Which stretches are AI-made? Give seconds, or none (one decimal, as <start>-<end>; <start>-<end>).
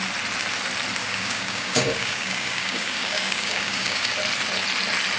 1.0-4.1